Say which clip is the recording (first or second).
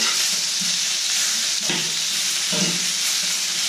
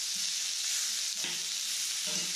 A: second